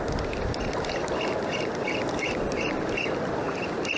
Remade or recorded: recorded